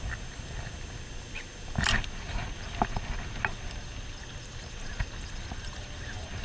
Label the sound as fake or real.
real